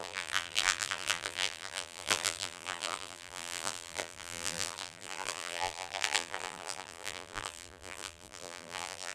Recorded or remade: remade